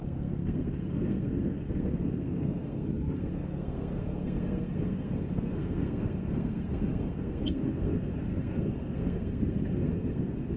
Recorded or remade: remade